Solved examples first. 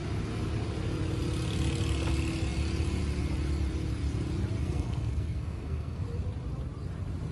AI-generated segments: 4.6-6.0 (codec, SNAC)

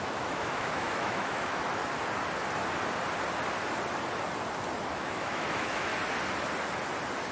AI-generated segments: 0.0-1.8 (autoencoder, DAC-VAE); 4.8-5.9

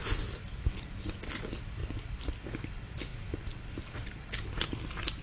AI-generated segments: none

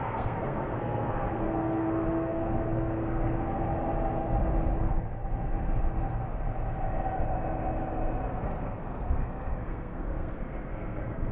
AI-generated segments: 0.0-3.7 (codec, SNAC); 4.8-5.2; 8.4-11.3

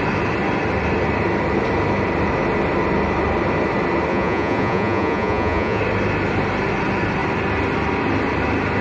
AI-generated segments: 4.1-5.8 (vocoder, Vocos)

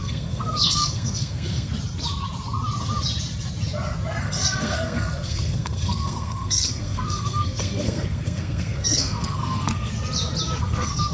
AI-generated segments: 0.0-1.7 (codec, SNAC); 4.2-9.9; 10.6-11.1